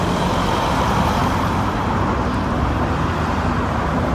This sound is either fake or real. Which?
fake